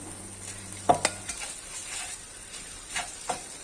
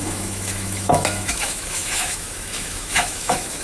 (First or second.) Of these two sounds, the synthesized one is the second